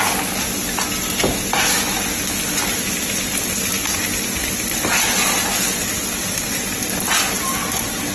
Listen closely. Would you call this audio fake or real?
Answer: real